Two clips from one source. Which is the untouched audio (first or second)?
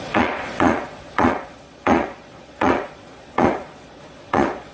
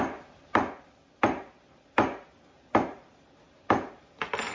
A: second